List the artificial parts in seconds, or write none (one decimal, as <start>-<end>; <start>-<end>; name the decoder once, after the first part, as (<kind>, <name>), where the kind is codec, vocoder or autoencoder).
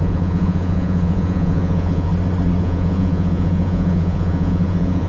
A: 0.0-2.1 (vocoder, Vocos); 2.6-5.1